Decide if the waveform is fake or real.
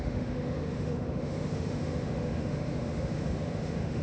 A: fake